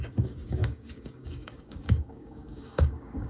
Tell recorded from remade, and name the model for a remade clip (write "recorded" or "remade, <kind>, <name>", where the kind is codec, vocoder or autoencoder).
remade, codec, DAC